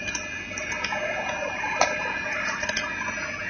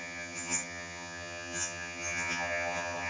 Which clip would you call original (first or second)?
first